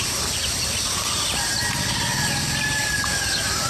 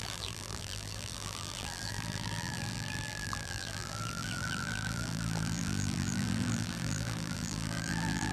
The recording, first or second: first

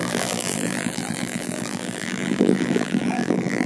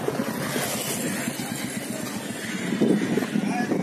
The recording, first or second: second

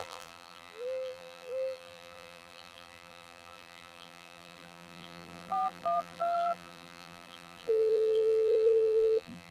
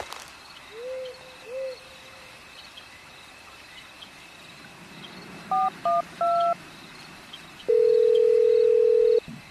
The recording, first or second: second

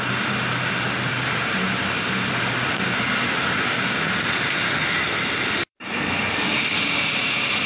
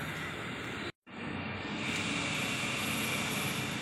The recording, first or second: second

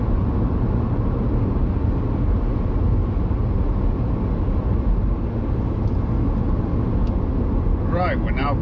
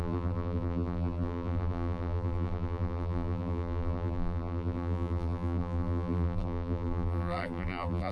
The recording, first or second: first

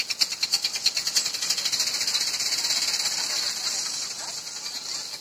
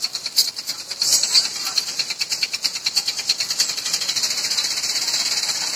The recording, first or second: first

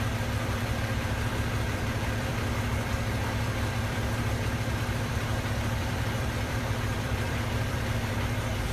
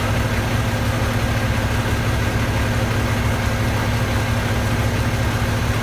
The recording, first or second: second